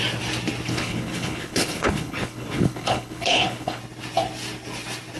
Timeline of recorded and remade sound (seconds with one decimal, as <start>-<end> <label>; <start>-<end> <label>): 0.0-0.7 recorded; 0.7-3.8 remade; 3.8-5.2 recorded